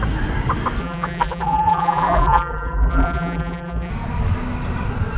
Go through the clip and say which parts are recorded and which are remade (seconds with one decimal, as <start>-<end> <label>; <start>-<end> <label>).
0.0-0.8 recorded; 0.8-3.9 remade; 3.9-5.2 recorded